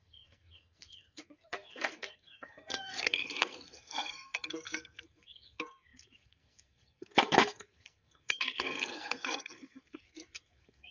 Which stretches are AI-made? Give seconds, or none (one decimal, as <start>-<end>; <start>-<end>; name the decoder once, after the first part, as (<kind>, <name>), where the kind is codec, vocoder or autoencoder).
0.0-10.9 (codec, SNAC)